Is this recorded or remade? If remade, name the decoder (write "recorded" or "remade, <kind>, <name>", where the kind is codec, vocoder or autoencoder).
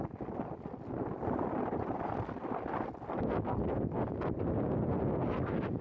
recorded